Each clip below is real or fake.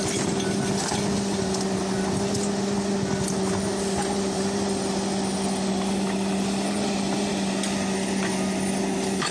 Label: real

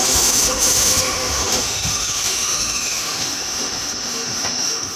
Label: fake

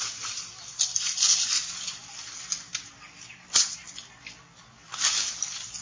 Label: real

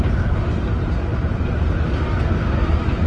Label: real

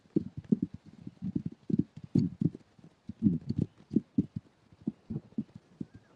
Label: real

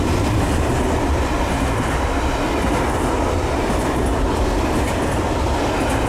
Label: real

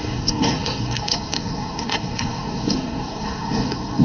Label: fake